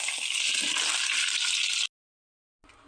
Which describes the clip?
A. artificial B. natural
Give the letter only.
B